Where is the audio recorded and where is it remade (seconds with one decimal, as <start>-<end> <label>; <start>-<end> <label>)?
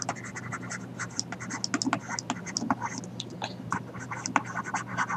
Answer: 0.0-5.2 recorded